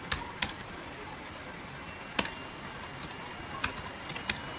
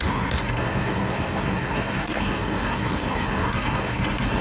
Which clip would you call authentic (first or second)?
first